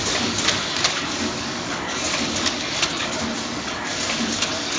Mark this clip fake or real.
fake